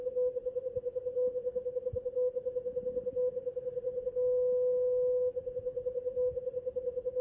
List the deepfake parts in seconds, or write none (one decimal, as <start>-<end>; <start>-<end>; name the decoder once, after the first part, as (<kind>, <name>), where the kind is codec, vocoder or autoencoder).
none